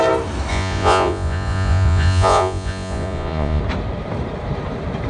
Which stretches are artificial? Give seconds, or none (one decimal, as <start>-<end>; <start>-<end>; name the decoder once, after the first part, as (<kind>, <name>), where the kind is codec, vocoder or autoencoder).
0.5-3.6 (vocoder, Vocos)